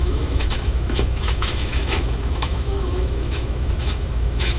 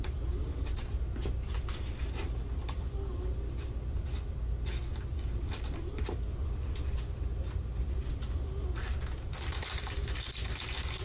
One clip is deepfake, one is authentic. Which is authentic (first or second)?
second